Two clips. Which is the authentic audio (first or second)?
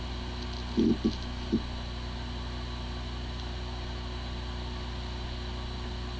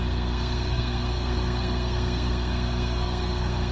first